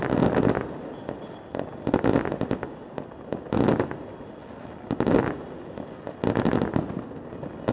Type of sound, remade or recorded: recorded